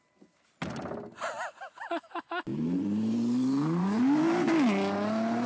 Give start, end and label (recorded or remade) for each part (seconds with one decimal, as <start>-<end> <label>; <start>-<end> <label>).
0.0-2.5 recorded; 2.5-4.0 remade; 4.0-5.5 recorded